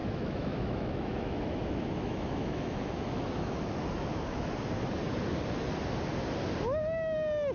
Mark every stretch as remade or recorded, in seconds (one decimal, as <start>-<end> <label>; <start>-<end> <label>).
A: 0.0-4.5 remade; 4.5-7.5 recorded

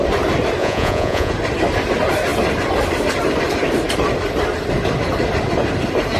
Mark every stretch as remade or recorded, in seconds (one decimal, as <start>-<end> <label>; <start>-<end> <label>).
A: 0.0-0.6 recorded; 0.6-1.3 remade; 1.3-6.2 recorded

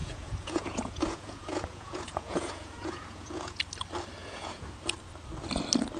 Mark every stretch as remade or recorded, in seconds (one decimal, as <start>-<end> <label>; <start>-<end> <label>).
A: 0.0-3.6 remade; 3.6-4.2 recorded; 4.2-4.7 remade; 4.7-6.0 recorded

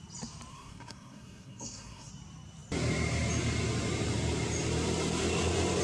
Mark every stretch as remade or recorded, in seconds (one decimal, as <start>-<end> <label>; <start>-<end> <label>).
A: 0.0-0.5 recorded; 0.5-2.1 remade; 2.1-5.8 recorded

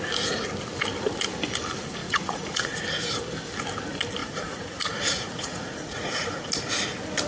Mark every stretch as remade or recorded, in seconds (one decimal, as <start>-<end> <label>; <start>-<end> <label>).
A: 0.0-2.0 recorded; 2.0-2.8 remade; 2.8-4.2 recorded; 4.2-6.5 remade; 6.5-7.3 recorded

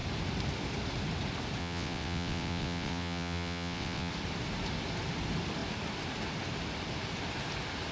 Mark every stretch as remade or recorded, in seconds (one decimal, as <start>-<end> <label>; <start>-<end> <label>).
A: 0.0-1.6 recorded; 1.6-4.1 remade; 4.1-7.9 recorded

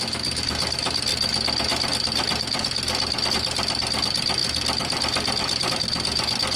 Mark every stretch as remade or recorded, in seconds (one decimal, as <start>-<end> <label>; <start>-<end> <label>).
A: 0.0-6.6 recorded

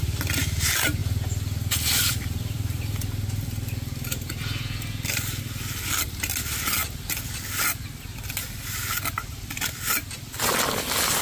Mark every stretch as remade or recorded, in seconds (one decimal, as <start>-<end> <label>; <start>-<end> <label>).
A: 0.0-1.0 recorded; 1.0-5.4 remade; 5.4-11.2 recorded